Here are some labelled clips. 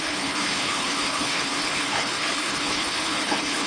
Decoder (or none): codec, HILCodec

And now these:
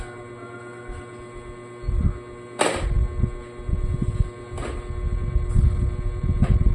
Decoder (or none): none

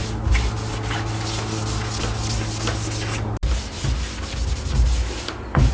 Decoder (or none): none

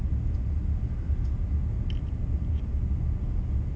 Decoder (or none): none